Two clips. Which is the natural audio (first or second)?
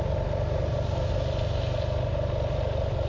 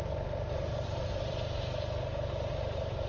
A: first